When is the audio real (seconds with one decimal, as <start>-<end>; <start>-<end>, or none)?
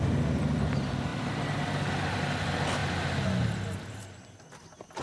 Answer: 0.0-5.0